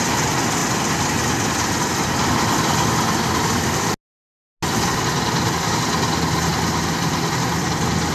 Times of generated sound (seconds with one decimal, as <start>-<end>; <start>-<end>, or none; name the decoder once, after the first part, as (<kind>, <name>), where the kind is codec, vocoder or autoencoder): none